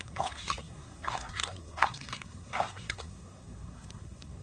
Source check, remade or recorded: remade